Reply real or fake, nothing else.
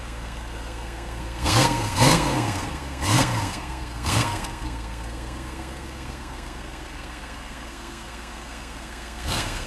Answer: fake